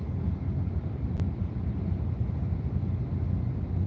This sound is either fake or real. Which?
real